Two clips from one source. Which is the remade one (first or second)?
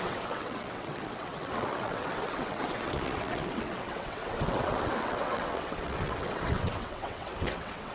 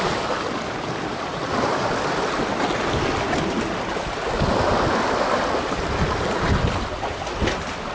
first